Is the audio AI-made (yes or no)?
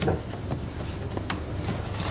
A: no